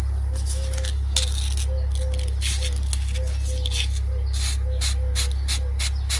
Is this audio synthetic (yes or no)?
no